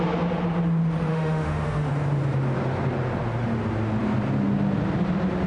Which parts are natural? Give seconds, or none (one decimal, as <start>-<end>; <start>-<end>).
0.0-1.1; 1.9-5.5